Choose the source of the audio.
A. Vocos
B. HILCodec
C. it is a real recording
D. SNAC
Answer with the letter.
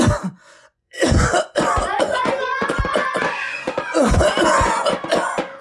A